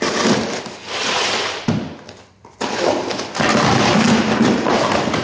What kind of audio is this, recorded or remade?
recorded